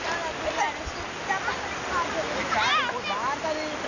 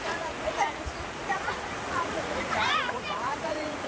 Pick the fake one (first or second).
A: second